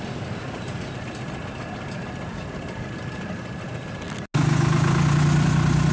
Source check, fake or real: real